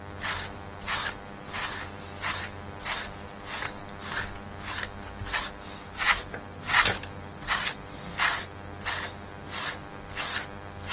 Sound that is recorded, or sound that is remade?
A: recorded